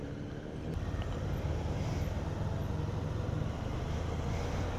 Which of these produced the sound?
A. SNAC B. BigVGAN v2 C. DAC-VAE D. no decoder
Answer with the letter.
D